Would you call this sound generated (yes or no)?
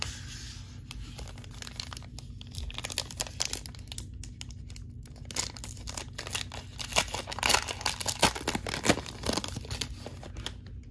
no